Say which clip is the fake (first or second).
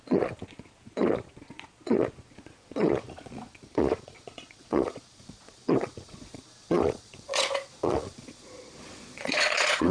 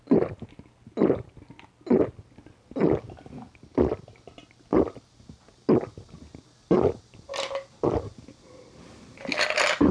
first